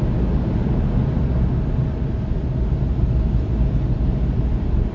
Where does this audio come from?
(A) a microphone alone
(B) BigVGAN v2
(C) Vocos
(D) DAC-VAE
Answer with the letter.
A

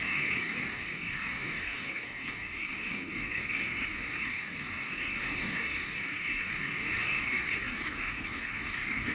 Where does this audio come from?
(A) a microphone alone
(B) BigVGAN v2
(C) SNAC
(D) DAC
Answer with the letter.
D